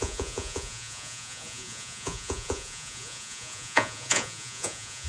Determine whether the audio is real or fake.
fake